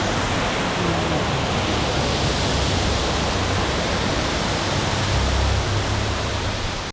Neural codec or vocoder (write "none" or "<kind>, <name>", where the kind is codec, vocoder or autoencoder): none